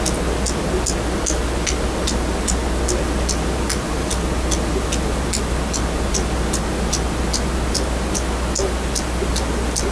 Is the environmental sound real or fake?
real